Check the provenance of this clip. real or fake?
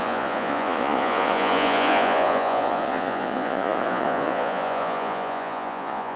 fake